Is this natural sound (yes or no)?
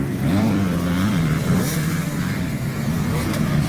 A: no